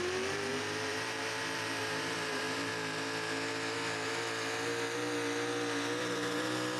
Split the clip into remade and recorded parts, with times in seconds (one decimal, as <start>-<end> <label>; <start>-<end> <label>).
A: 0.0-2.7 remade; 2.7-6.0 recorded; 6.0-6.8 remade